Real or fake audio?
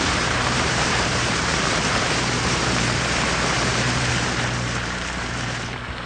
fake